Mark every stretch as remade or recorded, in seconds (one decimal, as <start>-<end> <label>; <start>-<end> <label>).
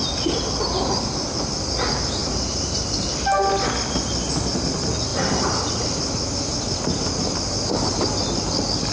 0.0-2.2 recorded; 2.2-3.1 remade; 3.1-5.1 recorded; 5.1-5.7 remade; 5.7-8.9 recorded